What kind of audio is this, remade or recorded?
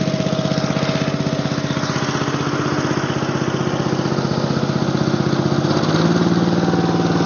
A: recorded